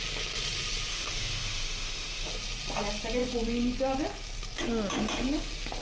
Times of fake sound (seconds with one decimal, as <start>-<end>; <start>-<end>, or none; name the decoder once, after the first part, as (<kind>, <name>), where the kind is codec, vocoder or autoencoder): 0.9-2.3 (autoencoder, DAC-VAE)